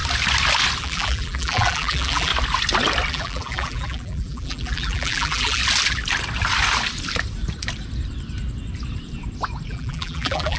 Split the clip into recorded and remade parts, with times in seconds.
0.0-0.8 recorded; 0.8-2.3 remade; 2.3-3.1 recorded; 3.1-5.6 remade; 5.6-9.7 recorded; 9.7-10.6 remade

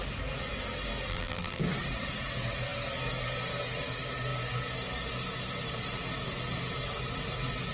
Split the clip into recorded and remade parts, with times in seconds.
0.0-1.1 recorded; 1.1-1.6 remade; 1.6-7.7 recorded

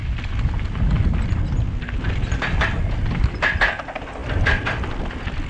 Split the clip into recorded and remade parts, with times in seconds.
0.0-4.2 recorded; 4.2-5.0 remade; 5.0-5.5 recorded

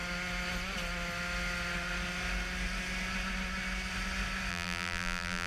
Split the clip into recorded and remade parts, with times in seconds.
0.0-4.5 recorded; 4.5-5.5 remade